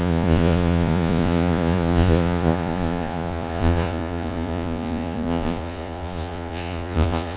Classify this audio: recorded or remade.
remade